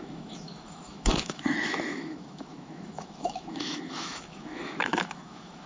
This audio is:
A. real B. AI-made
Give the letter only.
B